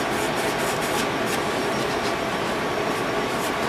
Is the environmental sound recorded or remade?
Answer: recorded